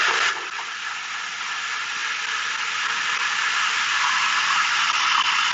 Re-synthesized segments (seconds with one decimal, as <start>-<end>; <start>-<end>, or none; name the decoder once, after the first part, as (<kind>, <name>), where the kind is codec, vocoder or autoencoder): none